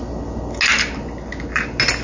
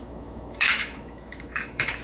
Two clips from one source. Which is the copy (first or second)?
second